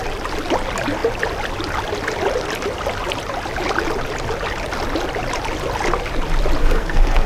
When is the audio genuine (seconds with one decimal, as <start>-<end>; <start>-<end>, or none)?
0.0-6.6

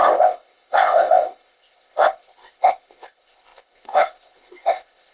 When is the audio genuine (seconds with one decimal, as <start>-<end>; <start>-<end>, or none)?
none

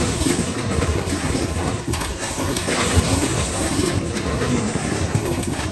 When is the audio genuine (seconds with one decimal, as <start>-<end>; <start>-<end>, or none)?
none